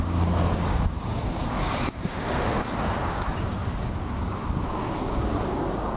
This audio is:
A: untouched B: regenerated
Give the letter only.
B